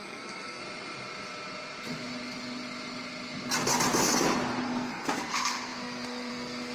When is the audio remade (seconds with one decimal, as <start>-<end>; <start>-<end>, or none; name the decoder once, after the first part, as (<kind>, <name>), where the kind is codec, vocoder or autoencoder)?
0.0-0.6 (codec, SNAC); 4.6-6.7